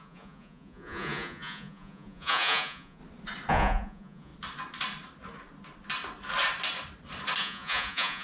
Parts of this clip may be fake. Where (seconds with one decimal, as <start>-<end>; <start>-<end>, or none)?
0.0-3.0; 3.5-4.3; 7.4-8.2